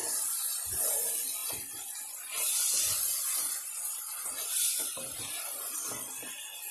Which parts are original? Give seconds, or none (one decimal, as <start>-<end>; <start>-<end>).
0.0-6.7